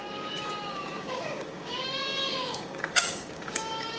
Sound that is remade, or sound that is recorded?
remade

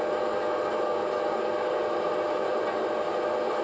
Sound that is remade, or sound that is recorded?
recorded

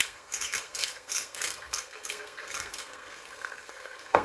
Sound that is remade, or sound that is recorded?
remade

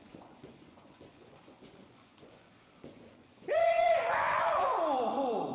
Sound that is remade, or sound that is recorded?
remade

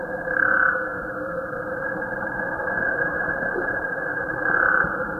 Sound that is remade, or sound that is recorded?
remade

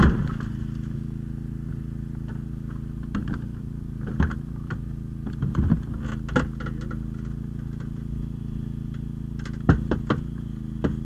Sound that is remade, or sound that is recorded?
recorded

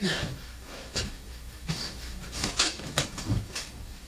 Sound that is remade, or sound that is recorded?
remade